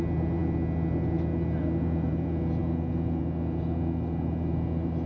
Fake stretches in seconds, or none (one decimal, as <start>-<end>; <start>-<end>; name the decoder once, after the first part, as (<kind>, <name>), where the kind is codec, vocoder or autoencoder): none